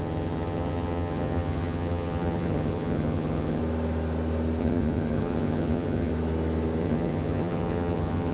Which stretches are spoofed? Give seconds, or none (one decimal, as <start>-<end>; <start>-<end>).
0.0-3.6; 4.6-6.1; 6.8-8.3